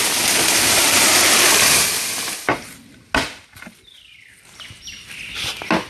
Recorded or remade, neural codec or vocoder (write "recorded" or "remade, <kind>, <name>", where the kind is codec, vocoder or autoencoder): recorded